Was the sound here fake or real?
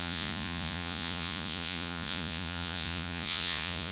fake